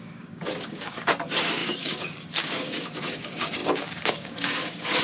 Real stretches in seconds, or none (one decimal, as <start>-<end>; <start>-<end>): none